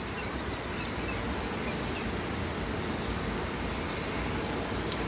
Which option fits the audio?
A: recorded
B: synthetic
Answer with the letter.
A